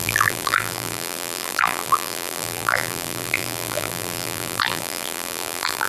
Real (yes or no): no